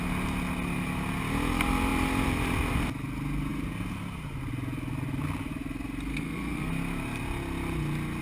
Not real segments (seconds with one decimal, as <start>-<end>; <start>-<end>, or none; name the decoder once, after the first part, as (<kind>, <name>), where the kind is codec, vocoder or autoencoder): 6.1-6.7 (codec, SNAC)